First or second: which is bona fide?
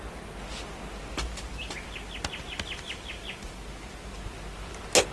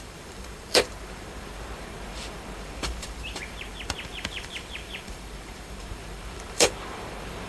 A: first